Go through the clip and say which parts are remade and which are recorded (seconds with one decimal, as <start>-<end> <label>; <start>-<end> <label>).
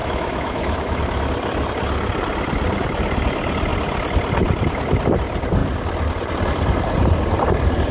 0.0-1.0 remade; 1.0-7.9 recorded